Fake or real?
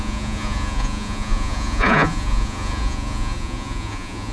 fake